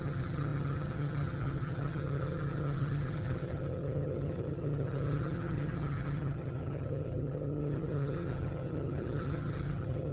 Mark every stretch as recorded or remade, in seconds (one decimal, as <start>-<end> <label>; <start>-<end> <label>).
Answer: 0.0-10.1 remade